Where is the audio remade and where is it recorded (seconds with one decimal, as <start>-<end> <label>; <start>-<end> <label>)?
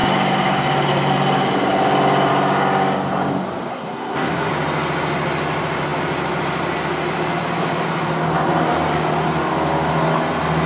0.0-3.7 recorded; 3.7-4.5 remade; 4.5-10.7 recorded